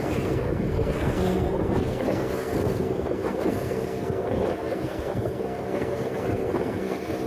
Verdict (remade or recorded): remade